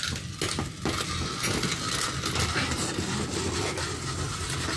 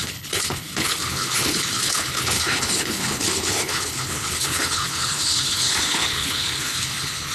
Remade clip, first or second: second